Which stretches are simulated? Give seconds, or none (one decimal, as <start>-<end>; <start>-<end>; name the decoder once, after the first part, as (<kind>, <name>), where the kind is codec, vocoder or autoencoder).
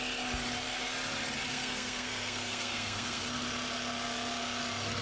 1.5-3.2 (codec, SNAC)